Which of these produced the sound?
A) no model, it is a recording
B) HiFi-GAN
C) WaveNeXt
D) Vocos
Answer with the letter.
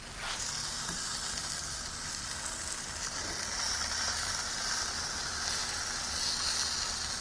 A